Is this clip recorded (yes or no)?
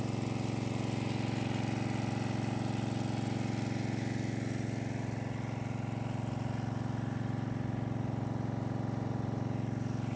yes